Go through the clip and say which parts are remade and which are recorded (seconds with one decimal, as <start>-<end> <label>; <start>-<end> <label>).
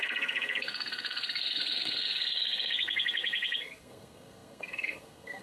0.0-5.4 remade